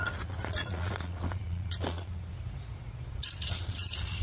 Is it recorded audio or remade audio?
remade